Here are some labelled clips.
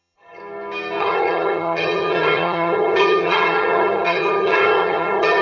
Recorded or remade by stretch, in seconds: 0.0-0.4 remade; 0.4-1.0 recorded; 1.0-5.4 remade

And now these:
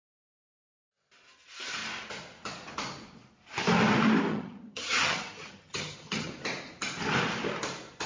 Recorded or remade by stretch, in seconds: 0.0-4.3 recorded; 4.3-6.3 remade; 6.3-8.1 recorded

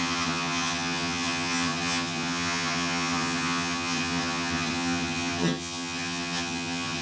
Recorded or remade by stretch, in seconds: 0.0-7.0 remade